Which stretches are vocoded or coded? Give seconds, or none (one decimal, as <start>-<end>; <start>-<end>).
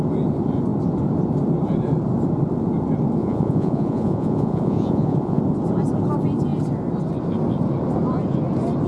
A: 3.2-5.4